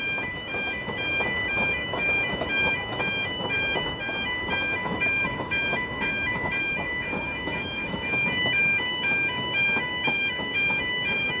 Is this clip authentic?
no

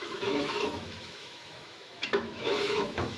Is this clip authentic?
no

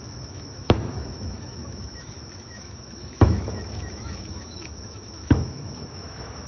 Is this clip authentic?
no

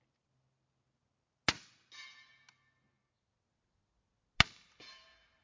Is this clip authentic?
yes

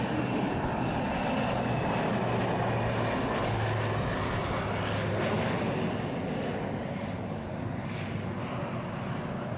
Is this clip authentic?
yes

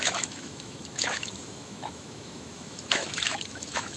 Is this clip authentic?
no